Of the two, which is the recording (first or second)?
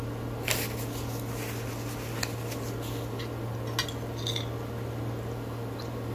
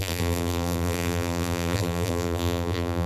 first